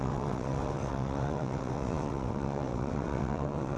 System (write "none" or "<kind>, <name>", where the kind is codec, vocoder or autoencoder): vocoder, WaveNeXt